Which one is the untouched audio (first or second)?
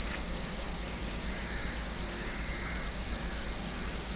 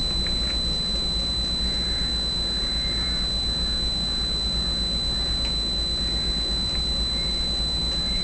second